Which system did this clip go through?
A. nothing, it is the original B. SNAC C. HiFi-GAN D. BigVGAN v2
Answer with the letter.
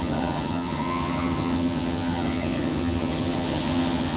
C